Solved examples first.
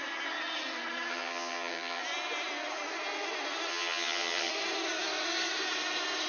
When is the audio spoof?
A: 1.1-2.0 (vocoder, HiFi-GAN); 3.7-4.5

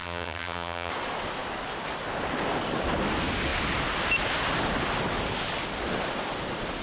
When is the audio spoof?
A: 0.0-0.9 (vocoder, HiFi-GAN)

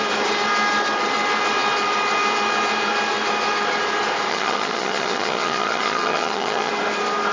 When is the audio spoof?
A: 4.3-6.7 (vocoder, HiFi-GAN)